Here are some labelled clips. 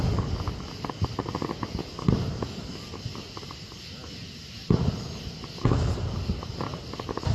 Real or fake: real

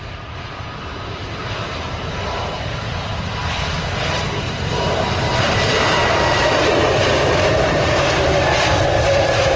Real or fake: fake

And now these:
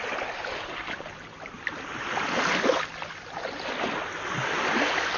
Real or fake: real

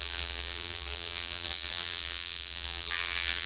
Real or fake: fake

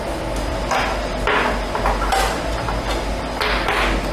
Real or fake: real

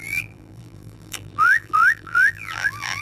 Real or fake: fake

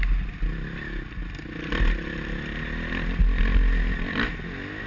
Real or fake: real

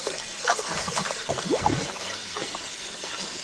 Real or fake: fake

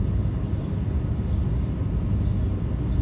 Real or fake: real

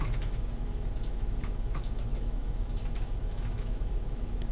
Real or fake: fake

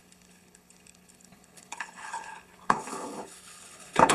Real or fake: fake